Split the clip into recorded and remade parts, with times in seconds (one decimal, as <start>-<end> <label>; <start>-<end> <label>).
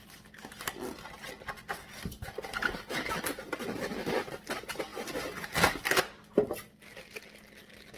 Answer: 0.0-8.0 recorded